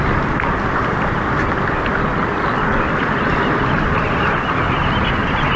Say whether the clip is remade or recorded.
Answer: recorded